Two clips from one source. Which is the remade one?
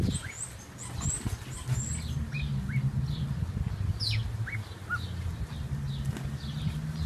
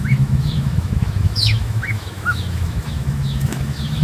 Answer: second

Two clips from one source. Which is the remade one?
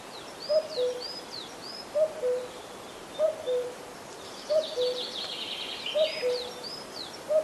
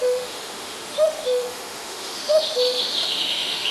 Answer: second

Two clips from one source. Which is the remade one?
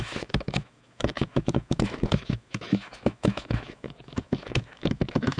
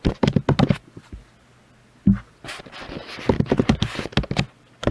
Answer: first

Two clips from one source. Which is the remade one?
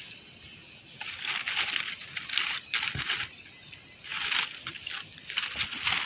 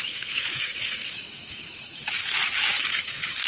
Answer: second